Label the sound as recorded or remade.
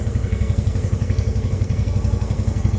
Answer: remade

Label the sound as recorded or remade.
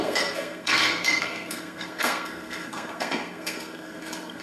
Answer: remade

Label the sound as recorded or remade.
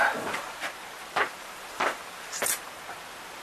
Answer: remade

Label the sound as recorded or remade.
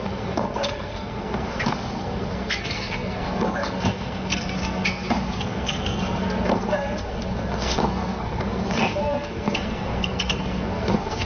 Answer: remade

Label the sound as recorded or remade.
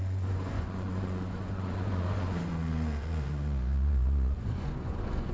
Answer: remade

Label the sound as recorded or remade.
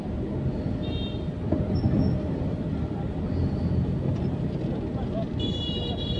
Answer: recorded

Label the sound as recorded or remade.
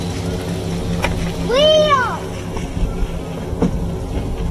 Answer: recorded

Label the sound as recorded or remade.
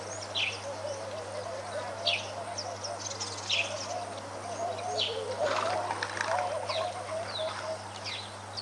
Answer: recorded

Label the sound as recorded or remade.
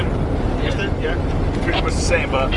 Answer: remade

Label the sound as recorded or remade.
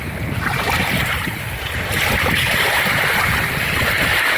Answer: recorded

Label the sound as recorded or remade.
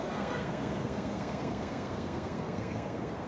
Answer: remade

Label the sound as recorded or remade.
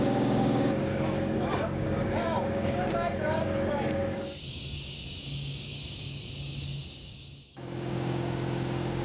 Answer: remade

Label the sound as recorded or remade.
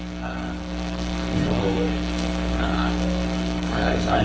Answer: remade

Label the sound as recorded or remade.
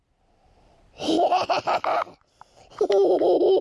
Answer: recorded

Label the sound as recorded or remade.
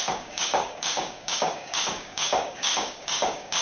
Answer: remade